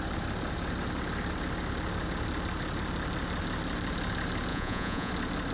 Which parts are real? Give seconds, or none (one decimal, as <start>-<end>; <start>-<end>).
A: 0.0-4.5; 5.1-5.5